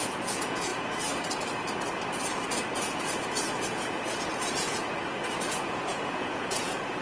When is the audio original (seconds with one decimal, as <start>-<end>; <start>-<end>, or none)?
0.7-2.7; 4.8-5.5